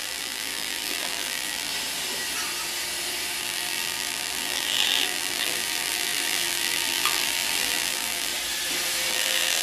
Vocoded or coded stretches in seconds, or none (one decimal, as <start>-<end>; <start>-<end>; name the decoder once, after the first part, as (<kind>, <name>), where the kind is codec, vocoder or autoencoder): 0.0-1.7 (vocoder, BigVGAN v2); 3.4-8.3; 9.1-9.6